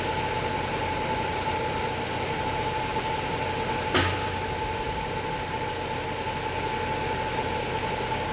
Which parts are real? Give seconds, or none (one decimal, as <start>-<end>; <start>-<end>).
0.0-8.3

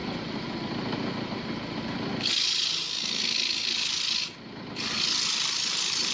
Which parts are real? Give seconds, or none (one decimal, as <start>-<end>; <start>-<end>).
0.0-6.1

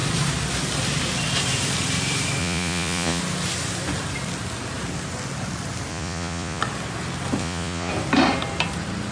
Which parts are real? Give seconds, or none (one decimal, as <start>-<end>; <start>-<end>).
0.0-2.4; 3.2-5.9; 6.6-7.4; 7.9-9.1

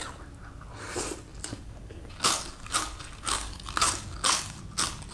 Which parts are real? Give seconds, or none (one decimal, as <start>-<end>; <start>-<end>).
0.0-1.5; 4.6-5.1